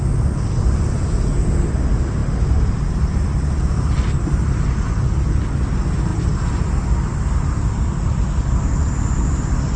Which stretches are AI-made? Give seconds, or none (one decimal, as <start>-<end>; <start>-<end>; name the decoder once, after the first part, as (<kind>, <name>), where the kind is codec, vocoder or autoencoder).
none